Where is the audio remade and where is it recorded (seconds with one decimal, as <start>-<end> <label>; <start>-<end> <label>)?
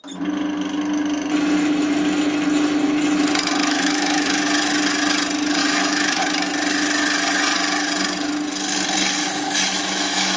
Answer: 0.0-3.6 recorded; 3.6-4.4 remade; 4.4-5.6 recorded; 5.6-6.2 remade; 6.2-9.2 recorded; 9.2-10.4 remade